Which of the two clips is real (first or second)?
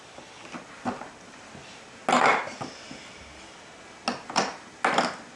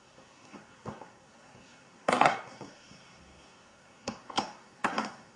first